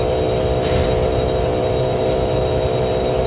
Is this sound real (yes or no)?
yes